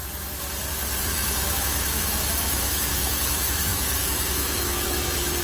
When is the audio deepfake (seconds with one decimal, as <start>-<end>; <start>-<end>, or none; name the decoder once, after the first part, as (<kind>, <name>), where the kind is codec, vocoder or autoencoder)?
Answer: 1.0-5.4 (autoencoder, DAC-VAE)